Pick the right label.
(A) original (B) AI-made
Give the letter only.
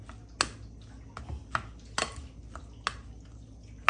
A